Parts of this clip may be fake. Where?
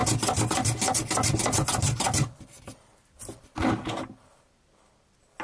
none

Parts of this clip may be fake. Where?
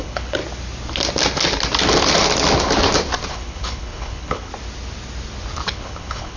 0.0-0.4 (codec, HILCodec); 3.3-4.5; 5.7-6.4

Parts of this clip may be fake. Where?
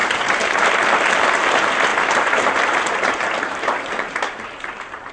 0.0-0.7 (vocoder, BigVGAN v2); 1.9-5.1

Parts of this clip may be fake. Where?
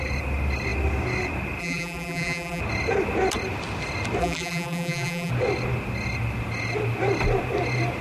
1.6-2.6 (vocoder, BigVGAN v2); 4.2-5.3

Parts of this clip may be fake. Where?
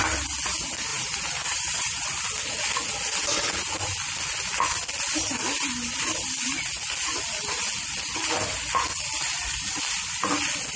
0.9-2.2 (vocoder, BigVGAN v2)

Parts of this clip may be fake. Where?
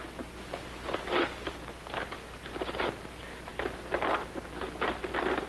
none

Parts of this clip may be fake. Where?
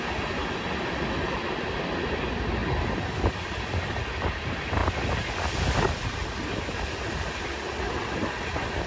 none